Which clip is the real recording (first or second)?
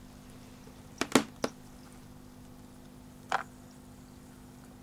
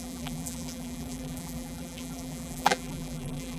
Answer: first